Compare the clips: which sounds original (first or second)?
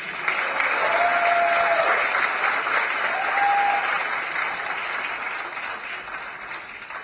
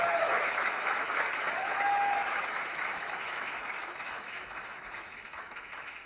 first